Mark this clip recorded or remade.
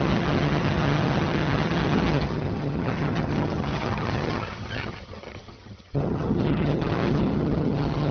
remade